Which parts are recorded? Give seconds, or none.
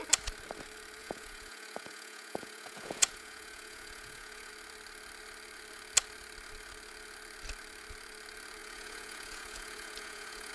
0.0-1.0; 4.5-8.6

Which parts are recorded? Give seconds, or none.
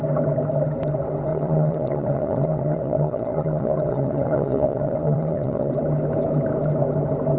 0.0-1.3; 5.7-7.4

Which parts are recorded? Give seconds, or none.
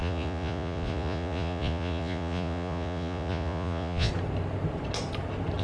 4.1-5.6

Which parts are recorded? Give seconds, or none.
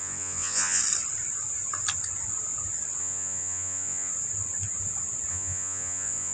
0.8-3.0; 4.1-5.3